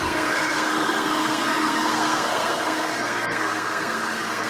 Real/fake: fake